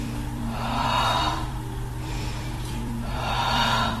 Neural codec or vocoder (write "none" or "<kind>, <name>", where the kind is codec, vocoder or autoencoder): vocoder, BigVGAN v2